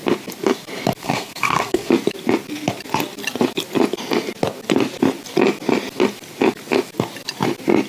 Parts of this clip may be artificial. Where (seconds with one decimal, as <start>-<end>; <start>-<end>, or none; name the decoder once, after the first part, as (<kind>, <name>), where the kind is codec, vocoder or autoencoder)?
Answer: 1.0-1.9 (codec, SNAC)

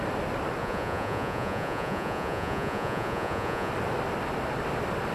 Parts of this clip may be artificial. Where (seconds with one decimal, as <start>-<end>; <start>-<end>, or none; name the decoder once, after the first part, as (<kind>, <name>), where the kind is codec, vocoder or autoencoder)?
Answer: 0.6-3.7 (vocoder, Vocos)

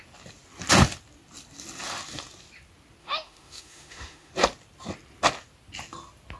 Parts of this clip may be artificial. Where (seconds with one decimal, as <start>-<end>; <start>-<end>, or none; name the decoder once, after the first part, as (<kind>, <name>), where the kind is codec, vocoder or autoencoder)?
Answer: 3.0-4.3 (autoencoder, DAC-VAE)

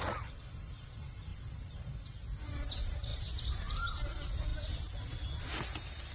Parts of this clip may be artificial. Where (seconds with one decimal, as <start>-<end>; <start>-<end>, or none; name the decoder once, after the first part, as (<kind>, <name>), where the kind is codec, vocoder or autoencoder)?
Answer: 3.1-3.9 (vocoder, BigVGAN v2)